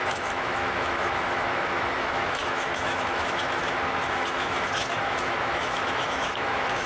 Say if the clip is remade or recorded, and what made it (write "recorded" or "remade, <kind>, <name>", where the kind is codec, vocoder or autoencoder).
remade, autoencoder, DAC-VAE